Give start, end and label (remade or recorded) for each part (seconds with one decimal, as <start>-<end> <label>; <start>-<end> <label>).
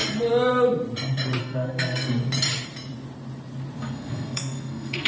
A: 0.0-1.4 recorded; 1.4-2.1 remade; 2.1-3.8 recorded; 3.8-5.1 remade